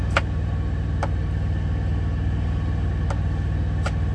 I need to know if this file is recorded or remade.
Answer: recorded